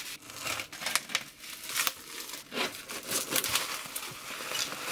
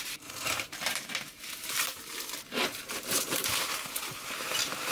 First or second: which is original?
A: first